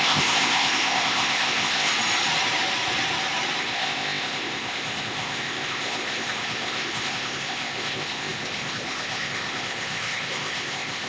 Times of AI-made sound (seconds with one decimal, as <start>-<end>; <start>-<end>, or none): 0.0-1.9; 3.6-11.1